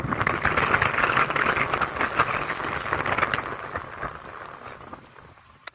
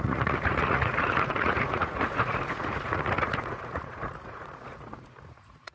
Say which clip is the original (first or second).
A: first